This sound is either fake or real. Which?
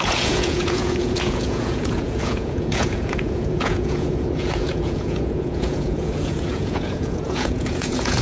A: fake